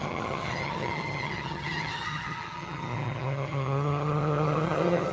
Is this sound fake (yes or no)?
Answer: yes